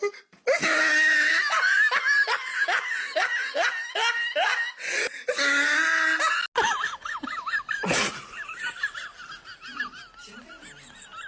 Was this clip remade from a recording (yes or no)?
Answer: no